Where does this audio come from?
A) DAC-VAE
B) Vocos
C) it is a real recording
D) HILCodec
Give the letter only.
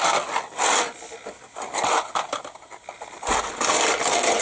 C